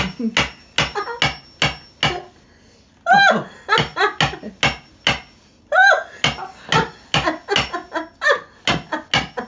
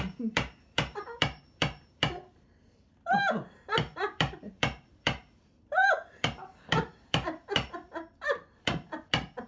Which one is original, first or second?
first